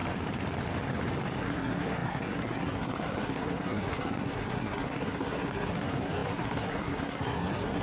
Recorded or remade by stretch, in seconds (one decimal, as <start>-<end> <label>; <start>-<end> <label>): 0.0-1.4 recorded; 1.4-7.8 remade